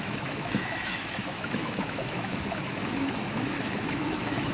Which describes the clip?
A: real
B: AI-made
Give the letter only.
B